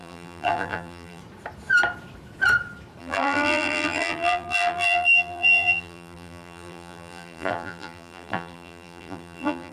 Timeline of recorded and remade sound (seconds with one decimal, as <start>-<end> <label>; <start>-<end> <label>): 0.0-1.2 remade; 1.2-3.0 recorded; 3.0-9.7 remade